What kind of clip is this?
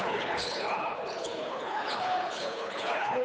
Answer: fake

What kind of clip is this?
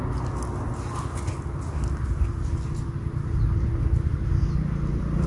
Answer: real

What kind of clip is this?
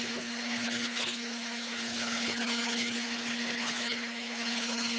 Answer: fake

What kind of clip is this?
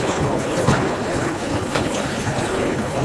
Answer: fake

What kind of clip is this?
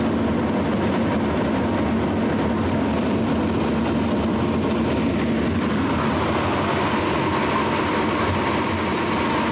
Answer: real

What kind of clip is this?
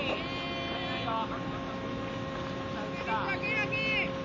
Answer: real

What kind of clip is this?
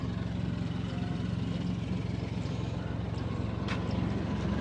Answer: real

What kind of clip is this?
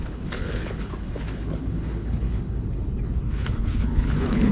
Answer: fake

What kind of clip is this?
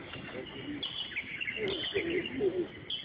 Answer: real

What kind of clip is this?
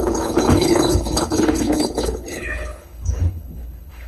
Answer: fake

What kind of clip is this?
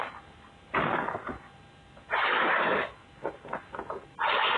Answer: real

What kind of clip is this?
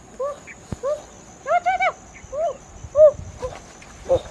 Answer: real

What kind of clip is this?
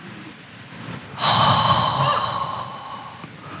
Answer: real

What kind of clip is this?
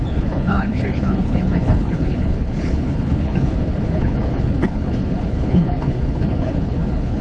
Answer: fake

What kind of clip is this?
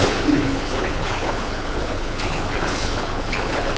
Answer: fake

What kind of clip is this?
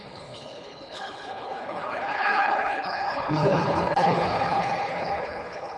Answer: fake